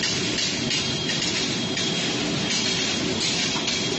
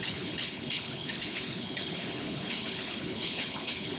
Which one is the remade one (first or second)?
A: second